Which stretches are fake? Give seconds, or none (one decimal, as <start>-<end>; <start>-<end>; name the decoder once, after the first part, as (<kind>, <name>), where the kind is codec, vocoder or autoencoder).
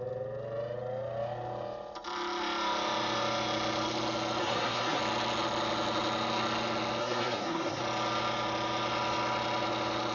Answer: 4.4-5.0 (codec, SNAC); 7.0-7.8